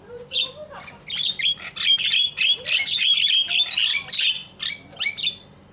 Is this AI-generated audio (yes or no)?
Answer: no